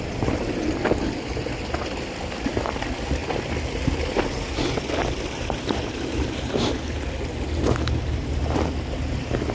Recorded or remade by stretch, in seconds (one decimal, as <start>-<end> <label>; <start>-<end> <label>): 0.0-9.5 recorded